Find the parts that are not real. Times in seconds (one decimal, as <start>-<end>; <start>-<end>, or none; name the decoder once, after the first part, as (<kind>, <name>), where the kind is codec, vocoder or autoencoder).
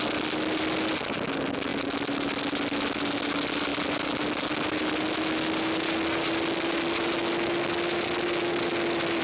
none